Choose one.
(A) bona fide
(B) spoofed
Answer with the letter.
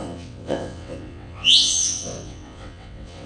B